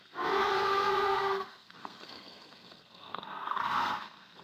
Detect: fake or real fake